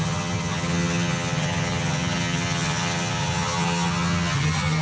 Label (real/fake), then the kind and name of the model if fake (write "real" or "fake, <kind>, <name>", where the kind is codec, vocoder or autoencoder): fake, vocoder, HiFi-GAN